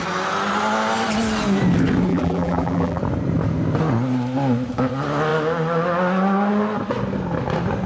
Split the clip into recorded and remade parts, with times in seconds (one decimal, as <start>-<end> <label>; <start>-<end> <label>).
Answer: 0.0-2.1 recorded; 2.1-3.0 remade; 3.0-7.9 recorded